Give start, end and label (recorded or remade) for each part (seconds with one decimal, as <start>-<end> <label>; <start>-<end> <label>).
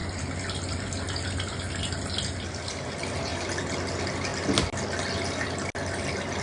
0.0-6.4 recorded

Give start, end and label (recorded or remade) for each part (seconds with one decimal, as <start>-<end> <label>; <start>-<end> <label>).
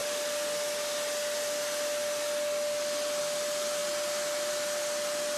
0.0-5.4 recorded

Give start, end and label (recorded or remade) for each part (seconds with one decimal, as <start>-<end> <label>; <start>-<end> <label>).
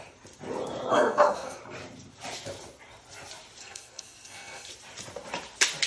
0.0-0.9 recorded; 0.9-1.6 remade; 1.6-3.6 recorded; 3.6-4.7 remade; 4.7-5.9 recorded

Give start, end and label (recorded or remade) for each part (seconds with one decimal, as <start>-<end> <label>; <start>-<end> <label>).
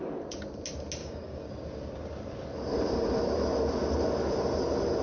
0.0-1.0 recorded; 1.0-1.5 remade; 1.5-5.0 recorded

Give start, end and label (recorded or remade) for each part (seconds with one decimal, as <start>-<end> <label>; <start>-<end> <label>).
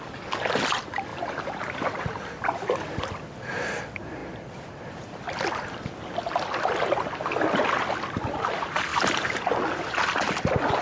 0.0-1.1 recorded; 1.1-3.6 remade; 3.6-4.2 recorded; 4.2-5.5 remade; 5.5-8.9 recorded; 8.9-9.6 remade; 9.6-10.8 recorded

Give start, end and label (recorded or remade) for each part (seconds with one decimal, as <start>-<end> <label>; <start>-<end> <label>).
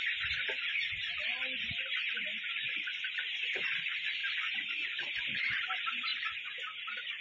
0.0-7.2 recorded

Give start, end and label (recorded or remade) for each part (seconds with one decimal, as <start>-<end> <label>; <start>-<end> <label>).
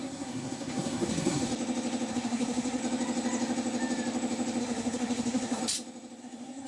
0.0-1.5 remade; 1.5-2.1 recorded; 2.1-2.8 remade; 2.8-4.6 recorded; 4.6-5.6 remade; 5.6-6.2 recorded; 6.2-6.7 remade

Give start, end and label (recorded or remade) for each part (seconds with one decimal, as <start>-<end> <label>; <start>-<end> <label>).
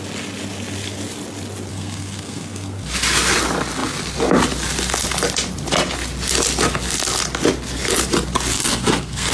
0.0-1.7 recorded; 1.7-2.9 remade; 2.9-8.5 recorded; 8.5-9.3 remade